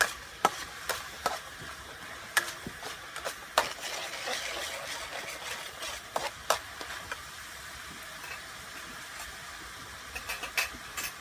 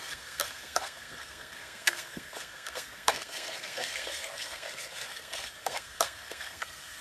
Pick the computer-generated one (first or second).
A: second